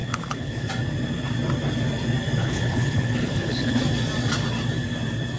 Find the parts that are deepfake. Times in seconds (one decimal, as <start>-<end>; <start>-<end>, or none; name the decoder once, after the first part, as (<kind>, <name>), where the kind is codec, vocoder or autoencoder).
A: 0.0-0.7 (codec, HILCodec); 2.4-3.8

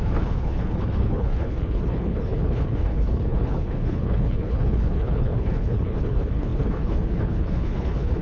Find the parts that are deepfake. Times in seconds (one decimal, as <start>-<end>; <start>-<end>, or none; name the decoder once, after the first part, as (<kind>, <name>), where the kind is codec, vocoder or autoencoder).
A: 0.0-8.2 (codec, HILCodec)

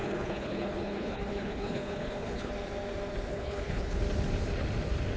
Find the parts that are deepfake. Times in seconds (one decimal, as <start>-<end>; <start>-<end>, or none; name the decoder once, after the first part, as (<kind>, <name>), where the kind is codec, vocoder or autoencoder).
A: 0.0-2.5 (codec, HILCodec); 3.3-4.0

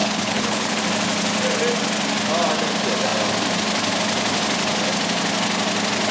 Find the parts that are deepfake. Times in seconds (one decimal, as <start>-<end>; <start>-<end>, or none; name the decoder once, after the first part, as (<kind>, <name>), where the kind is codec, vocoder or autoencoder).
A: 0.0-0.8 (codec, HILCodec)

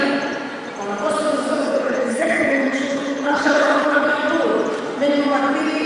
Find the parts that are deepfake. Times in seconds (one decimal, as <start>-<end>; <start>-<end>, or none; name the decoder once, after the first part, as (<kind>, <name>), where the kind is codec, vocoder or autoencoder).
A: 1.6-4.1 (codec, HILCodec)